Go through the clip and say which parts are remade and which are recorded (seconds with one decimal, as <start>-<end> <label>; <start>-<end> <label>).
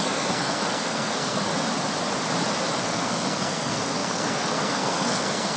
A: 0.0-1.5 remade; 1.5-2.8 recorded; 2.8-5.6 remade